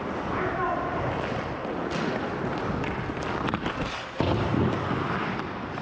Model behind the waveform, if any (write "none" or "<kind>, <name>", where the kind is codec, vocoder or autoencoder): none